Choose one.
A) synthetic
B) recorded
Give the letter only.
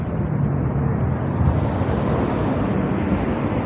B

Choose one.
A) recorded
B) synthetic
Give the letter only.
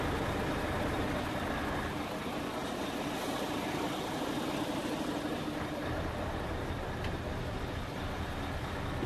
A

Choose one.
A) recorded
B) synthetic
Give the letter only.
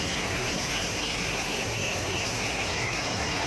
B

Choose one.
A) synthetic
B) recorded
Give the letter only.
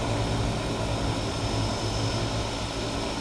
B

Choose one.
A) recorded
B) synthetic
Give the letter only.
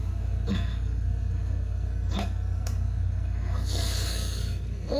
B